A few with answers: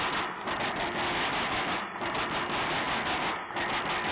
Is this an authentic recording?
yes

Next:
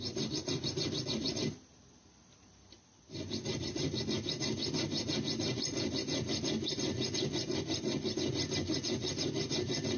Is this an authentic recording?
yes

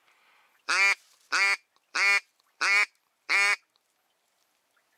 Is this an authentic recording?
yes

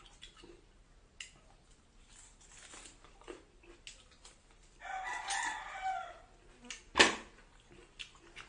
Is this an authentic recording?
yes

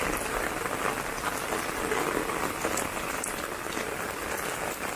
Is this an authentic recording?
yes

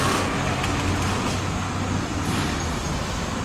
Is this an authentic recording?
yes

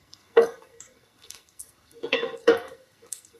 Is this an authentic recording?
no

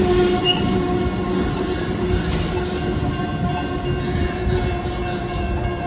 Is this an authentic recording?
yes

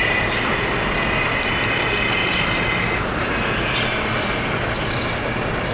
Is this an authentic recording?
yes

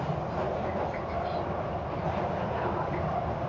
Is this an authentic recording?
yes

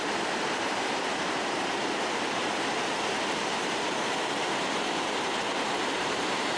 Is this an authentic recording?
no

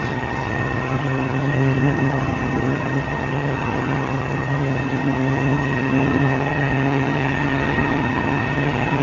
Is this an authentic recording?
no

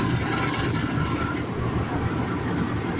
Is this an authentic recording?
yes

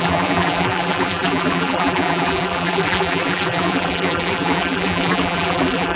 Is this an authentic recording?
no